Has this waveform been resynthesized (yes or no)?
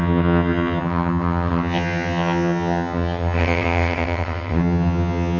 yes